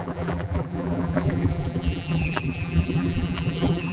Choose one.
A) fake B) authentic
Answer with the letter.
A